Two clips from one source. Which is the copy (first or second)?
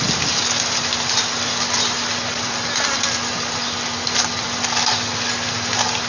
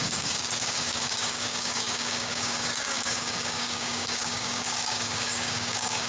second